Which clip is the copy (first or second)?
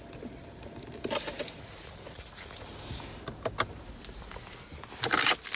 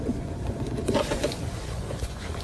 second